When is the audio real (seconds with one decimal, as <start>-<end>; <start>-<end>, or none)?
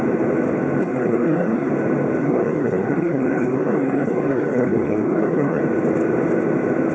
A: 0.0-0.8; 1.7-2.2; 5.6-6.9